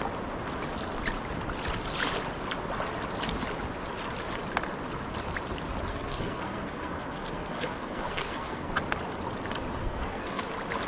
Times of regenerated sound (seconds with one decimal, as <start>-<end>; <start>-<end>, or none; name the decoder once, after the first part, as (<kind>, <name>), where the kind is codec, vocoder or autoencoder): 5.9-8.7 (codec, SNAC); 9.8-10.4